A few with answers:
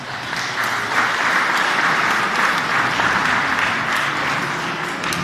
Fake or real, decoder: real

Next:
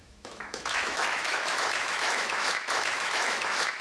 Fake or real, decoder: fake, autoencoder, DAC-VAE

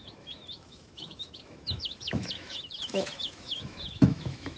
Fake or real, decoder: fake, autoencoder, DAC-VAE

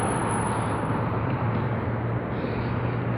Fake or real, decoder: real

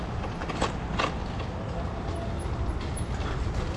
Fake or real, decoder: real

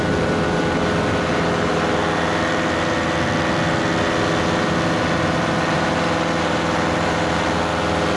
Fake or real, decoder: real